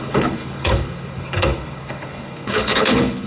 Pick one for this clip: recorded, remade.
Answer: remade